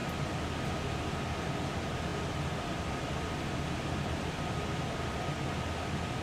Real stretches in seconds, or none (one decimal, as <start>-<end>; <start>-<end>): 0.0-6.2